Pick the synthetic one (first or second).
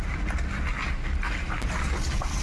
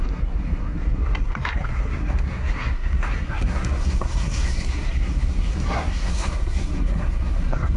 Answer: second